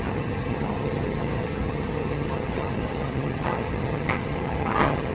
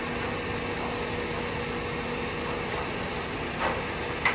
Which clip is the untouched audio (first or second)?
second